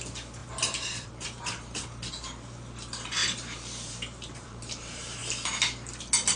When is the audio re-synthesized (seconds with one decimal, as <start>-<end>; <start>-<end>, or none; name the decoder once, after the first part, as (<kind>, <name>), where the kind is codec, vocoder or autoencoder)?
0.4-2.1 (vocoder, BigVGAN v2); 3.2-5.2